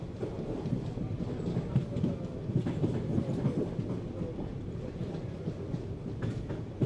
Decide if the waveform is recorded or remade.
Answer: recorded